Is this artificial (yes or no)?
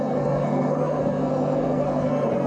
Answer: yes